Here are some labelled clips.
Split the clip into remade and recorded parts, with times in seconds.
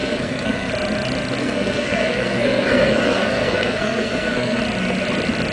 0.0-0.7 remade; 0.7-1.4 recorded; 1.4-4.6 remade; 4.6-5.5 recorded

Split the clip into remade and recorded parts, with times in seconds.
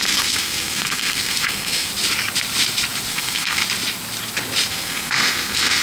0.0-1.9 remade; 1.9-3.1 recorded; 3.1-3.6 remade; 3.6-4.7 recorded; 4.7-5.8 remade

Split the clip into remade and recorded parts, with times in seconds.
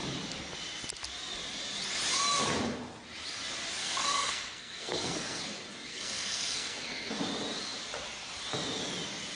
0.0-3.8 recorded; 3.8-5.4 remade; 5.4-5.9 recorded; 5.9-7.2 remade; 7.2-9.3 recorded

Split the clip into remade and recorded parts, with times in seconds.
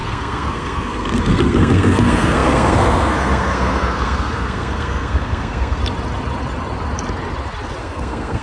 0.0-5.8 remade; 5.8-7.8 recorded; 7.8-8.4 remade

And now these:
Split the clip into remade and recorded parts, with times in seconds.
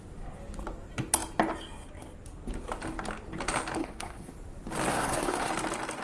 0.0-3.8 recorded; 3.8-4.3 remade; 4.3-4.9 recorded; 4.9-5.5 remade; 5.5-6.0 recorded